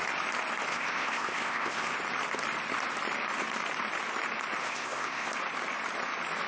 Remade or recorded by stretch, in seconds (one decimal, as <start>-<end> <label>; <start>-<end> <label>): 0.0-0.7 recorded; 0.7-1.9 remade; 1.9-4.6 recorded; 4.6-5.3 remade; 5.3-6.5 recorded